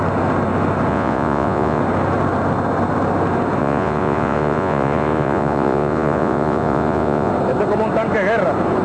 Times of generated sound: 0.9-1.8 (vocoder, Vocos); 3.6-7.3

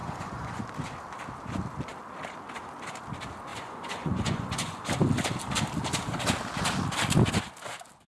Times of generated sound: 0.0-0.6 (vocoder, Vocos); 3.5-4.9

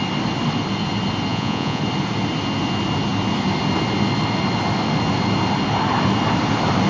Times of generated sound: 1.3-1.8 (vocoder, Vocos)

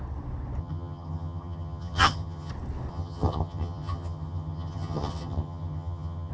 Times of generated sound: 0.6-2.5 (vocoder, HiFi-GAN); 2.9-6.3

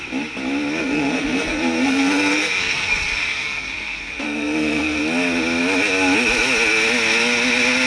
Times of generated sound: 0.8-5.0 (codec, SNAC)

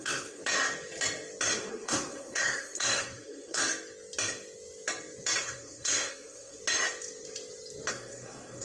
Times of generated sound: 0.0-0.4 (codec, SNAC); 1.7-3.6; 5.4-6.6; 7.9-8.6

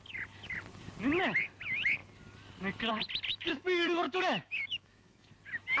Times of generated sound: 3.3-5.3 (autoencoder, DAC-VAE)

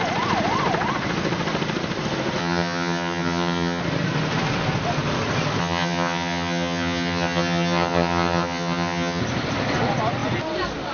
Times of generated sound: 2.4-3.8 (vocoder, HiFi-GAN); 5.6-9.2